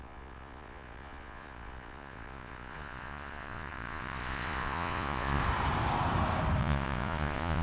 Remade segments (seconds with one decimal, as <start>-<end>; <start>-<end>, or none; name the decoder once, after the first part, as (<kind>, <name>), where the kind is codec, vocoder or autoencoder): 0.0-5.4 (vocoder, Vocos); 6.6-7.6